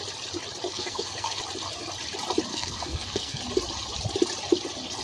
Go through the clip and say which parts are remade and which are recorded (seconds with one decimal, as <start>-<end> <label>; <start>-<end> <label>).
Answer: 0.0-0.7 recorded; 0.7-1.4 remade; 1.4-2.5 recorded; 2.5-3.4 remade; 3.4-5.0 recorded